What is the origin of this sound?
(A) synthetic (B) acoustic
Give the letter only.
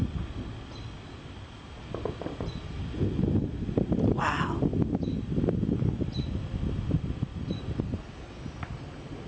B